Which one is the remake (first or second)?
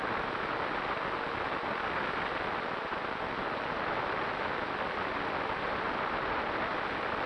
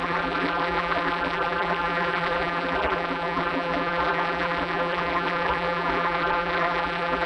second